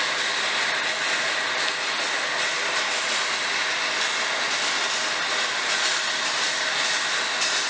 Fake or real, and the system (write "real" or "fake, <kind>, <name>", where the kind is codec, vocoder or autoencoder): real